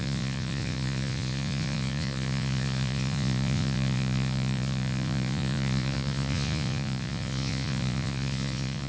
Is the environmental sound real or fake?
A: fake